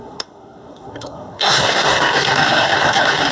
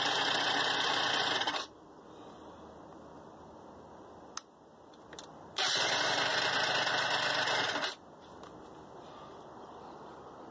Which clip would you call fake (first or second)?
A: first